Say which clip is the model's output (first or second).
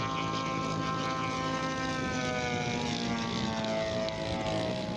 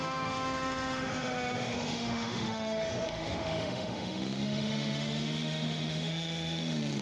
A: second